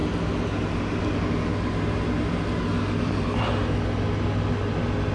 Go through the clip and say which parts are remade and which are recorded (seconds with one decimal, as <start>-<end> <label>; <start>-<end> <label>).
0.0-5.1 recorded